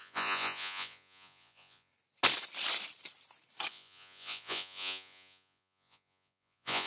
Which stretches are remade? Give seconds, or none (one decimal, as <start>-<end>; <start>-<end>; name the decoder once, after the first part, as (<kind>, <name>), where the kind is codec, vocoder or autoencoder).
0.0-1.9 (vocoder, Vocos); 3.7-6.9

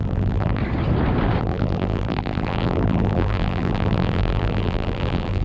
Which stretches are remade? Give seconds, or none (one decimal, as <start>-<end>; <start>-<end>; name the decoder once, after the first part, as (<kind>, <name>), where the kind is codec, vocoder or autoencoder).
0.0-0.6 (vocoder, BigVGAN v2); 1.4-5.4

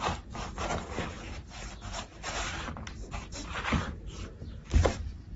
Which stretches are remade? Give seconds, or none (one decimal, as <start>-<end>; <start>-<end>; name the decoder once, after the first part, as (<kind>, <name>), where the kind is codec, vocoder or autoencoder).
2.1-4.5 (vocoder, BigVGAN v2)

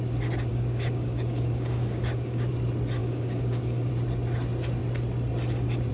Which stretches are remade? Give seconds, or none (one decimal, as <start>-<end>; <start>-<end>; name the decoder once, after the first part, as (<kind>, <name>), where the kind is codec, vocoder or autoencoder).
0.5-2.5 (codec, DAC); 3.0-3.9

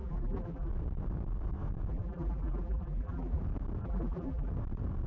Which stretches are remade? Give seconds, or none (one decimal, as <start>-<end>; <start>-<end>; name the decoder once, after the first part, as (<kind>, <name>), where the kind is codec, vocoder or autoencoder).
0.0-0.7 (vocoder, BigVGAN v2); 1.9-3.4; 3.8-4.5

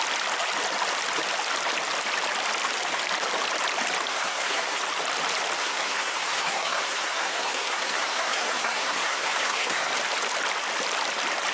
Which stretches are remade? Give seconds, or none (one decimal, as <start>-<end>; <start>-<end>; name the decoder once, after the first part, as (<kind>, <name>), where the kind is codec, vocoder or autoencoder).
4.1-4.8 (codec, SNAC); 5.6-9.9

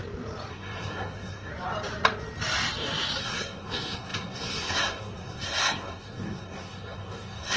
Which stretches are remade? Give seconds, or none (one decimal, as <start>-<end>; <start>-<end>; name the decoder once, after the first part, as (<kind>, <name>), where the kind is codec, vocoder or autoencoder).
0.5-1.5 (codec, SNAC); 3.2-7.6